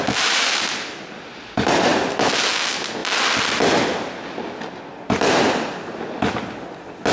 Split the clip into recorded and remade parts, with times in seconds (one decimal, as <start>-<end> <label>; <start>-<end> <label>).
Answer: 0.0-7.1 recorded